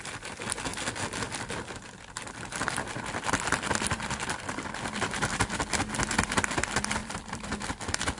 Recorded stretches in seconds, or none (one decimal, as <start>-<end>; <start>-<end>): 0.0-0.7; 5.3-7.0; 7.6-8.2